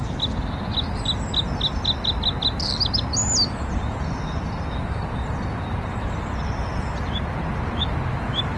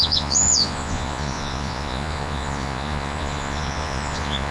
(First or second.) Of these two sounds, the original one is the first